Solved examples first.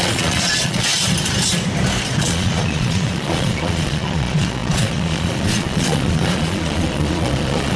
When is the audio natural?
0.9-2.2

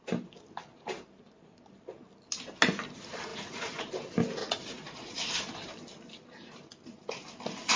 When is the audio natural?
0.0-3.3; 3.9-4.4; 5.4-7.8

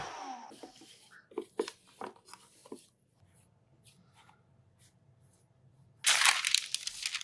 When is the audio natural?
0.0-7.2

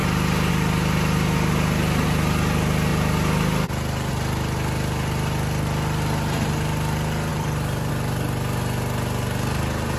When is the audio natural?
0.0-7.3; 7.9-10.0

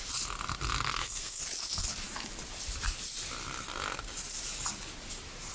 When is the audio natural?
0.0-0.9; 1.4-5.5

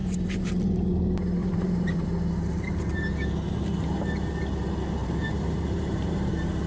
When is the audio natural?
0.5-1.4; 2.1-5.0; 6.3-6.7